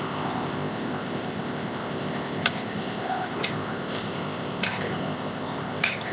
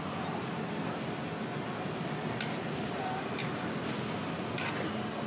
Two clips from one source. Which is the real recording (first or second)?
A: second